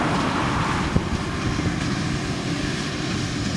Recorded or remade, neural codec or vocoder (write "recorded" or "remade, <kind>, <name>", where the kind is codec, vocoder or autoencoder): recorded